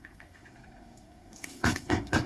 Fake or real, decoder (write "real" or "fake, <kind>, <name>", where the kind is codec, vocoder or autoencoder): fake, codec, SNAC